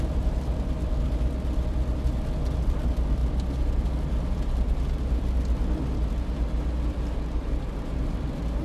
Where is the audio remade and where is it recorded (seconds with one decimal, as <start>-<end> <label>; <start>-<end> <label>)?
0.0-8.6 recorded